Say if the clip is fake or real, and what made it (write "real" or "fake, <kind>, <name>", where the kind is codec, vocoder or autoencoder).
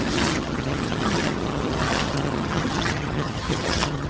fake, vocoder, HiFi-GAN